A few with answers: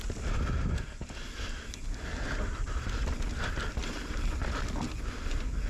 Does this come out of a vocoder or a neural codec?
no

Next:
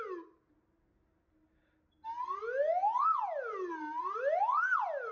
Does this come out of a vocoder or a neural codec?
no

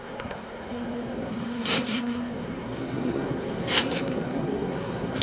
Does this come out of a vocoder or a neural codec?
yes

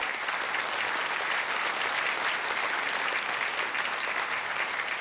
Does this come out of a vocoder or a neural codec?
no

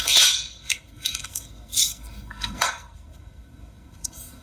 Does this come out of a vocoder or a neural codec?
yes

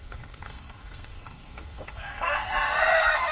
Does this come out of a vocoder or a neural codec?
yes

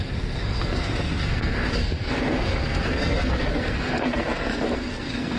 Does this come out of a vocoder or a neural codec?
yes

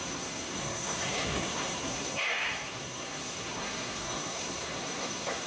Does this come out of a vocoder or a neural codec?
yes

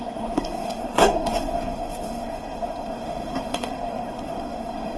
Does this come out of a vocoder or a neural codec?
yes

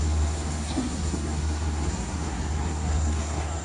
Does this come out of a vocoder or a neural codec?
yes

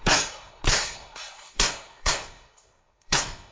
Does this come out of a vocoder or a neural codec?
yes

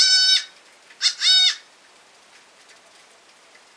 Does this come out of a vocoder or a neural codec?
no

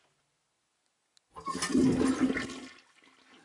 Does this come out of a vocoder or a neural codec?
no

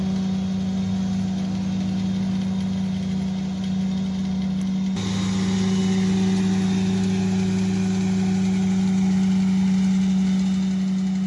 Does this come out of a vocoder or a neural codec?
no